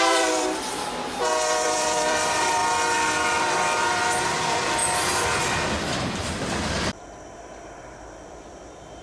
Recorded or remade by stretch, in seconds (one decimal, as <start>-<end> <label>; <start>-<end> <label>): 0.0-2.6 remade; 2.6-3.4 recorded; 3.4-4.8 remade; 4.8-5.8 recorded; 5.8-9.0 remade